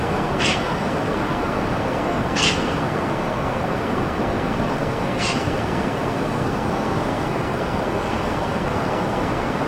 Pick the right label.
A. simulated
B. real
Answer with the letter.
A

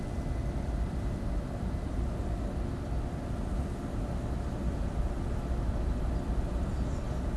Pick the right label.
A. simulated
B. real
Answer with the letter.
B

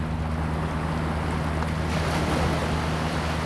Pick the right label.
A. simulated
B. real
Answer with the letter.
B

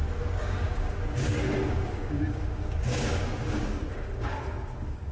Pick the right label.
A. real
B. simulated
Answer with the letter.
B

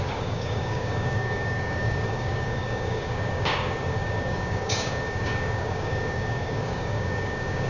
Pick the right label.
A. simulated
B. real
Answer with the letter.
A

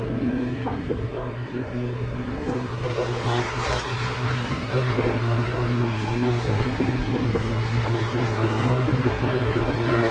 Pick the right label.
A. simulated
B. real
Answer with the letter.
A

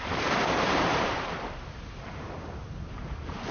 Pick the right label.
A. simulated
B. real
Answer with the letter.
A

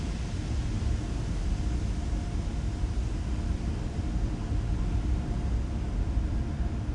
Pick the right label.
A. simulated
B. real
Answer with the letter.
B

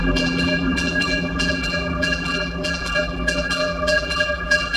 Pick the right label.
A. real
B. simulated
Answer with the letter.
B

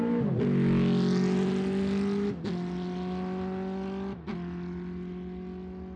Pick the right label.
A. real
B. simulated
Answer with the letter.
A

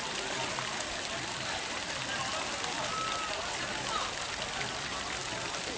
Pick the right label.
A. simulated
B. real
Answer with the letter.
B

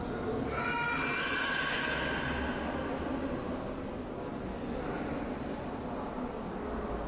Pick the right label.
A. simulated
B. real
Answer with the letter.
B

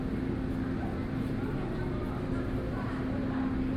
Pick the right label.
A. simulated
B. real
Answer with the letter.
B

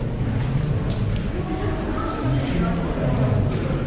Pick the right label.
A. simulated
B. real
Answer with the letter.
B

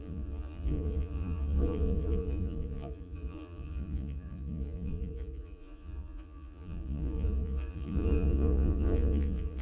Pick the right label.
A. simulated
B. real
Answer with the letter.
A